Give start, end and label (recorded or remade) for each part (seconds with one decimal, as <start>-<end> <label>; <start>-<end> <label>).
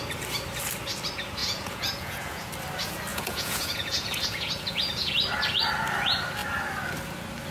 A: 0.0-1.4 recorded; 1.4-2.5 remade; 2.5-3.1 recorded; 3.1-5.1 remade; 5.1-7.5 recorded